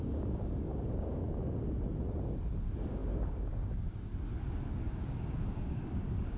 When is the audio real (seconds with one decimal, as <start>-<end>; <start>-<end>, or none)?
1.2-2.6; 4.1-4.7